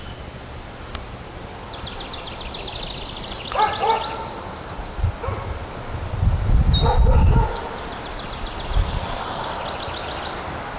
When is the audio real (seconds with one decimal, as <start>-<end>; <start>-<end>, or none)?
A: 0.0-8.8; 9.4-10.8